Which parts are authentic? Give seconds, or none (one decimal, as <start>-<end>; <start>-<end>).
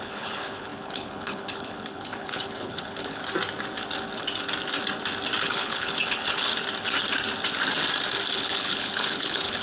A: 3.2-5.4; 6.5-8.3